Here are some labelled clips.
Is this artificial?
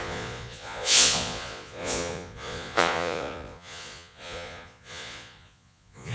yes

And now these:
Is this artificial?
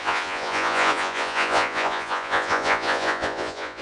yes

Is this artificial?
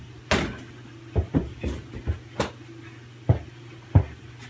no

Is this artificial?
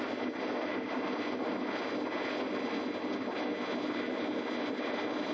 no